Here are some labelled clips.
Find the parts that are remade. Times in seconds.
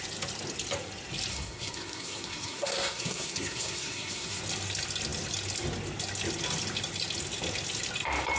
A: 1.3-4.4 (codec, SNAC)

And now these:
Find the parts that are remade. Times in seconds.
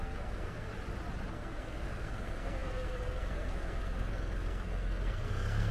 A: 0.0-0.7 (codec, SNAC); 1.3-5.7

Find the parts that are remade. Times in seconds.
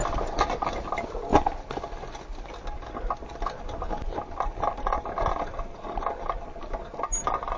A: none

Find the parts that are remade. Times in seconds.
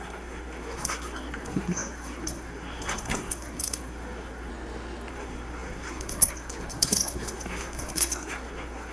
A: 0.0-4.5 (codec, SNAC); 5.1-8.9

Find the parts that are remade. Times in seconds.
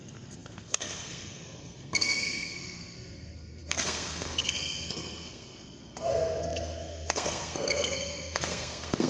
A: 0.0-9.1 (codec, SNAC)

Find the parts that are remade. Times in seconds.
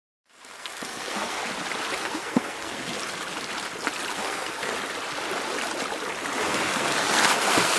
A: 0.0-1.4 (codec, SNAC); 2.0-2.9; 4.1-4.7; 6.4-7.8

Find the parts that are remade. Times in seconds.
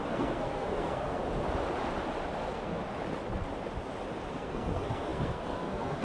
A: 0.0-1.2 (codec, SNAC); 2.4-2.8; 4.3-6.0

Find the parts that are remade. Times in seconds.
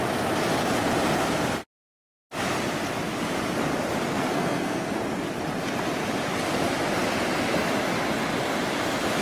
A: 4.1-5.0 (codec, SNAC)